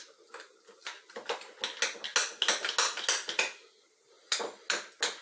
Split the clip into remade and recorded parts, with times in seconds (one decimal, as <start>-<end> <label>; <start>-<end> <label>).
0.0-5.2 recorded

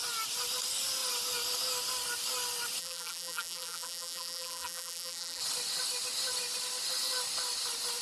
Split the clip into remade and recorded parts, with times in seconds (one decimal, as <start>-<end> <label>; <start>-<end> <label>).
0.0-2.8 recorded; 2.8-5.4 remade; 5.4-8.0 recorded

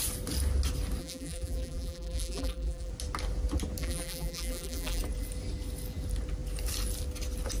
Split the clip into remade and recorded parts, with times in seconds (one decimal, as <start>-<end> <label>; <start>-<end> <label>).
0.0-1.0 recorded; 1.0-2.9 remade; 2.9-3.8 recorded; 3.8-5.0 remade; 5.0-7.6 recorded

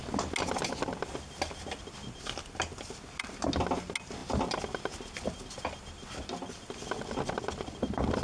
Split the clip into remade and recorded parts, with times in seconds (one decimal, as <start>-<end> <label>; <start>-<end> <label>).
0.0-8.2 recorded

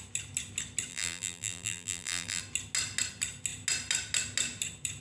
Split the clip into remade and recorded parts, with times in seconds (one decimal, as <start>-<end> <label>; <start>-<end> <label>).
0.0-0.9 recorded; 0.9-2.4 remade; 2.4-5.0 recorded